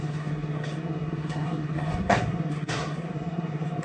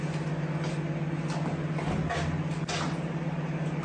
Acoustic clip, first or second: second